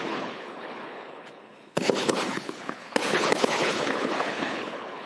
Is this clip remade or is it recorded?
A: remade